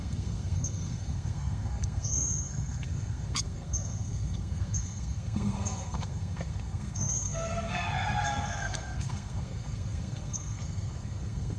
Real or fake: fake